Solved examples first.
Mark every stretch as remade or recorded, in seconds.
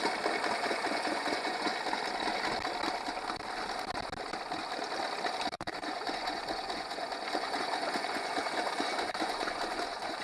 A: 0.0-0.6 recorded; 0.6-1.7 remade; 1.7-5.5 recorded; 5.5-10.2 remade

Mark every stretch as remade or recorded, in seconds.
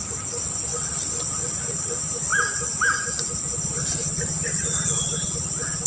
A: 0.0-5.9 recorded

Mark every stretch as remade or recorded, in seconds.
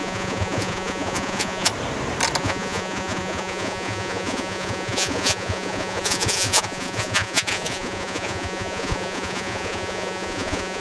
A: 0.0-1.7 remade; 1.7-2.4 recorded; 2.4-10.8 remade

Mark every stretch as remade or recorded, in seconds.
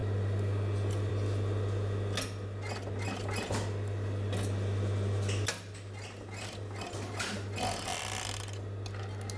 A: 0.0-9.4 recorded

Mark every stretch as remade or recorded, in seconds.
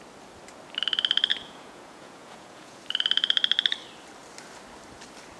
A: 0.0-1.3 recorded; 1.3-2.8 remade; 2.8-5.4 recorded